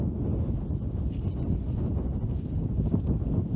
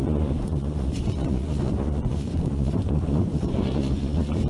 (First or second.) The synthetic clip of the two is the second